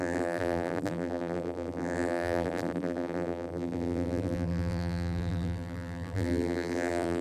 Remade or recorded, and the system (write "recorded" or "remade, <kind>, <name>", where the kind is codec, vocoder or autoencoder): remade, vocoder, BigVGAN v2